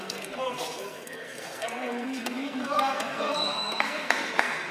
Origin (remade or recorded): remade